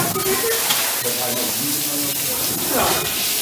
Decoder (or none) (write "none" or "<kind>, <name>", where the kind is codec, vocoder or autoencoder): none